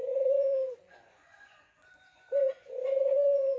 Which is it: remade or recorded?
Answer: remade